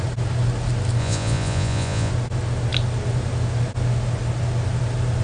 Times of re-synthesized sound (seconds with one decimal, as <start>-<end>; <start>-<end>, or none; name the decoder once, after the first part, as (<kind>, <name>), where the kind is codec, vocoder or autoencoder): 1.0-2.1 (vocoder, Vocos)